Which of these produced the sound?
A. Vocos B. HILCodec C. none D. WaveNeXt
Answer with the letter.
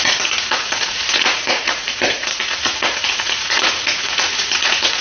A